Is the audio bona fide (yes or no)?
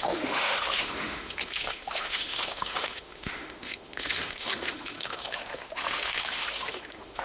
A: no